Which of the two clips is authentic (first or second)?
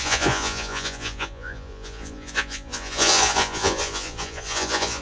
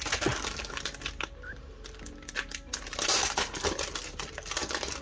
second